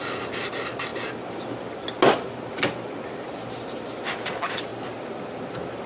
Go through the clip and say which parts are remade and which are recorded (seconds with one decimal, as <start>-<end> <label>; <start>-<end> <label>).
0.0-5.9 recorded

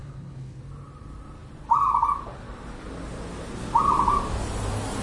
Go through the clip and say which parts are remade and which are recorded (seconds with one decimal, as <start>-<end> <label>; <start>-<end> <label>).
0.0-0.6 remade; 0.6-5.0 recorded